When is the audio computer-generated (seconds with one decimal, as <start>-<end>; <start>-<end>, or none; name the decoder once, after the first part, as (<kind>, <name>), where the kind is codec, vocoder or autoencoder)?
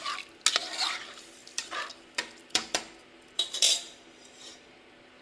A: 1.4-4.4 (vocoder, BigVGAN v2)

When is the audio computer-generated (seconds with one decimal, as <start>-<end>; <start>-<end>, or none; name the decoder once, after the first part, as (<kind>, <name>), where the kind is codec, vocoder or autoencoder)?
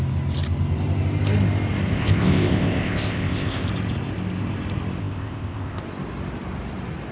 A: 1.9-3.7 (codec, ZipCodec); 5.0-5.8